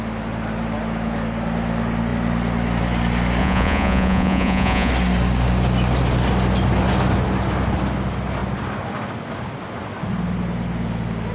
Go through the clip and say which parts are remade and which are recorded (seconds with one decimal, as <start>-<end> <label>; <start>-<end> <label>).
0.0-3.4 recorded; 3.4-4.9 remade; 4.9-11.3 recorded